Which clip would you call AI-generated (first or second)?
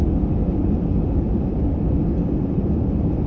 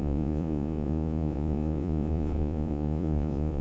second